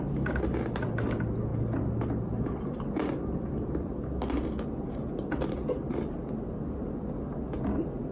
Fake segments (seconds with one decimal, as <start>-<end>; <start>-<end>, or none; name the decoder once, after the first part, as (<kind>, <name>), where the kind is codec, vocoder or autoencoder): 1.5-2.4 (vocoder, BigVGAN v2); 3.0-4.3